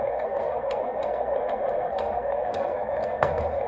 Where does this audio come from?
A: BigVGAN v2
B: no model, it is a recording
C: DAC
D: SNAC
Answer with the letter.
D